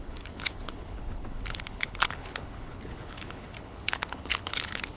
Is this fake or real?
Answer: fake